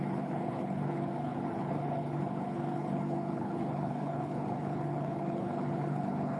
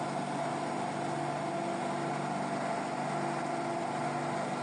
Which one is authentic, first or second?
second